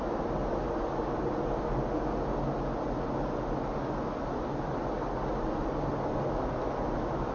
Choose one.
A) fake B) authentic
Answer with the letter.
B